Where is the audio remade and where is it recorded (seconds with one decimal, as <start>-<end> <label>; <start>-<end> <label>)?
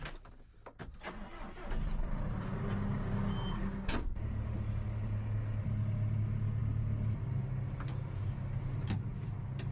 0.0-9.7 recorded